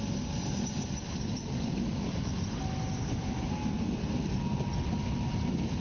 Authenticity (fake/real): real